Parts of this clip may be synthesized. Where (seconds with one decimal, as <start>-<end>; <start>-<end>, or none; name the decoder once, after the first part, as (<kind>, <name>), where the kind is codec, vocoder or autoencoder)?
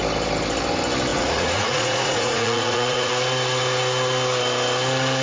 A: 1.1-3.1 (vocoder, Vocos)